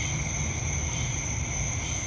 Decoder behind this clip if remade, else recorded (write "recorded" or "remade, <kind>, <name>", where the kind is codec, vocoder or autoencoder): recorded